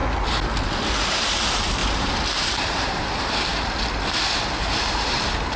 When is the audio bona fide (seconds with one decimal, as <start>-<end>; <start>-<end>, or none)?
0.0-1.1; 3.5-4.6

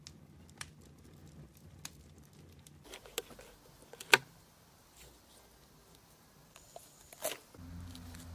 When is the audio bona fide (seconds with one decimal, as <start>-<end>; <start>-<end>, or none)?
0.0-8.3

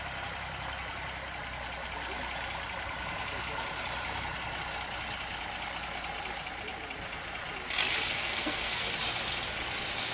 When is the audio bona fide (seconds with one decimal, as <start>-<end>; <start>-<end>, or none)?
0.0-8.1; 8.9-10.1

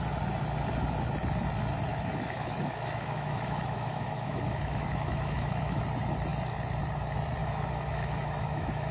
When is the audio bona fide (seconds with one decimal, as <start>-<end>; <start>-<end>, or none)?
0.0-1.9; 5.8-7.4

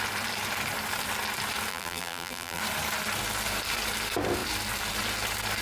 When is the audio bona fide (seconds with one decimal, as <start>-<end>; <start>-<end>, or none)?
0.0-1.7; 2.6-5.6

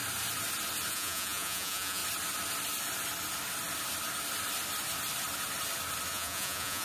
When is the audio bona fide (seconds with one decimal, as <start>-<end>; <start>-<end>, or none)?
0.0-0.9; 2.0-6.1

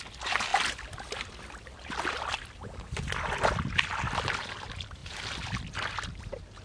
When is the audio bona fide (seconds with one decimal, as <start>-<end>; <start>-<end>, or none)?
0.0-6.6

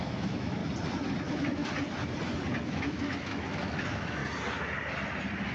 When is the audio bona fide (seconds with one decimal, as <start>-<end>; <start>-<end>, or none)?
0.6-1.2; 1.6-2.6; 4.2-5.5